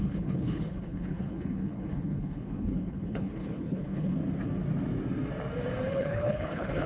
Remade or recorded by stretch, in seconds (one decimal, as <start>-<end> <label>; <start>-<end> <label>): 0.0-4.2 remade; 4.2-5.9 recorded; 5.9-6.9 remade

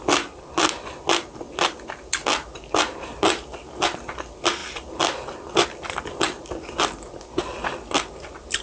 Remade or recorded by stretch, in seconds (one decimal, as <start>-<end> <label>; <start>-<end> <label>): 0.0-8.6 recorded

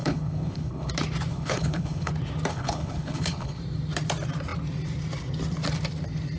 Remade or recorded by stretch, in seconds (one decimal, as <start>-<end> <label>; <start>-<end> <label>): 0.0-0.9 remade; 0.9-1.3 recorded; 1.3-2.1 remade; 2.1-2.5 recorded; 2.5-3.6 remade; 3.6-6.4 recorded

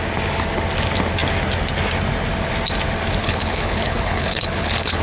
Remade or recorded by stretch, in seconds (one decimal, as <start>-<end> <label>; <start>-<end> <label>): 0.0-3.2 recorded; 3.2-5.0 remade

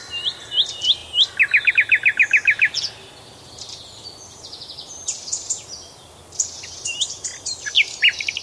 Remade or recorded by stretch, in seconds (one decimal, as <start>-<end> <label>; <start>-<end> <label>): 0.0-8.4 recorded

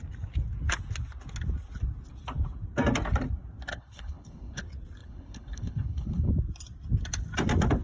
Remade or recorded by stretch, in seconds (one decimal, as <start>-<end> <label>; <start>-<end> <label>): 0.0-3.7 recorded; 3.7-4.6 remade; 4.6-5.0 recorded; 5.0-6.3 remade; 6.3-7.8 recorded